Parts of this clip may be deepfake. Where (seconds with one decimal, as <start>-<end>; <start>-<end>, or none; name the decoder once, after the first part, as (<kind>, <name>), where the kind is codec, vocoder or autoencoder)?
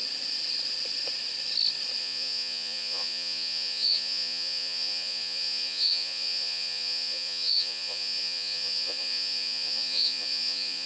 2.0-10.9 (vocoder, Vocos)